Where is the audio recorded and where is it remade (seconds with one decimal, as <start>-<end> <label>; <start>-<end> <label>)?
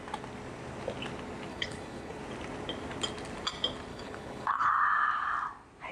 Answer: 0.0-1.5 recorded; 1.5-2.2 remade; 2.2-3.9 recorded; 3.9-4.7 remade; 4.7-5.9 recorded